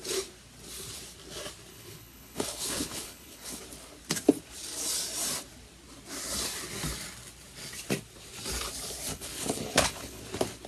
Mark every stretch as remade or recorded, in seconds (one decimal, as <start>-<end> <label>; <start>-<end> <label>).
0.0-1.7 recorded; 1.7-3.6 remade; 3.6-9.1 recorded; 9.1-10.2 remade; 10.2-10.7 recorded